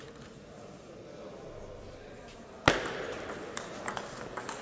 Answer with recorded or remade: recorded